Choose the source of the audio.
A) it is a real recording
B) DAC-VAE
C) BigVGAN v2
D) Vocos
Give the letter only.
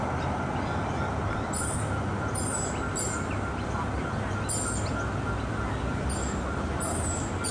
A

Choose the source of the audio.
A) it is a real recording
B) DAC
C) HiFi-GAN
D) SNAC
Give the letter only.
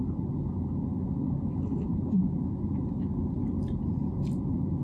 A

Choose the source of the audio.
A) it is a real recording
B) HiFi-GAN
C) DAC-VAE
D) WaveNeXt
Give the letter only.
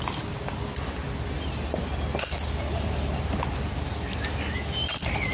A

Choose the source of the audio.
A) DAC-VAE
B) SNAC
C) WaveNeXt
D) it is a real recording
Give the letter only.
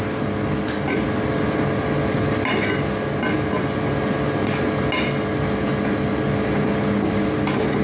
D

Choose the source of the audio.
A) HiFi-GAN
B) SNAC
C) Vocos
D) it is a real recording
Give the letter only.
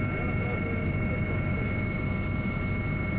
D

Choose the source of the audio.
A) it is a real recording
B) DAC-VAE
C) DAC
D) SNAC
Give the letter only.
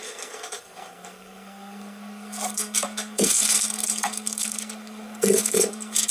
D